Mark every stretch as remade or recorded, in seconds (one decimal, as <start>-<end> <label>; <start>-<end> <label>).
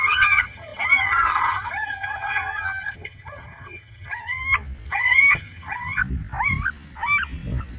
0.0-4.4 remade; 4.4-4.9 recorded; 4.9-6.0 remade; 6.0-7.8 recorded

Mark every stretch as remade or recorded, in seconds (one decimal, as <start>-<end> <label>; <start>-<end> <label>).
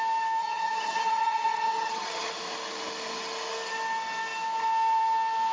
0.0-0.4 recorded; 0.4-2.3 remade; 2.3-5.5 recorded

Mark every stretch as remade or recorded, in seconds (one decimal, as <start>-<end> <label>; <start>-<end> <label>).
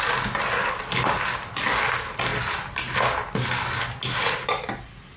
0.0-5.2 recorded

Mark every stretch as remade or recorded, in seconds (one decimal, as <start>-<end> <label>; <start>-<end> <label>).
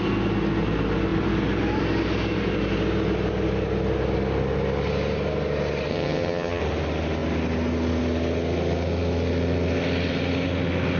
0.0-5.9 recorded; 5.9-6.6 remade; 6.6-11.0 recorded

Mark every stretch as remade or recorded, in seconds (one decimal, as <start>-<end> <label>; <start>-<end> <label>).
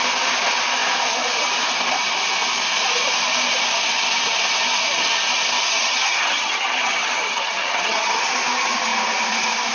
0.0-5.7 recorded; 5.7-8.2 remade; 8.2-9.7 recorded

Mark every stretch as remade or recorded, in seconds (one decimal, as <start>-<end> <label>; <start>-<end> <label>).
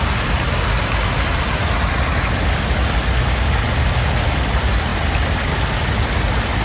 0.0-6.6 recorded